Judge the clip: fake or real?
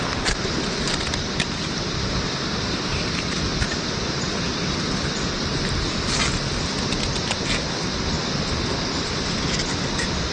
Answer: real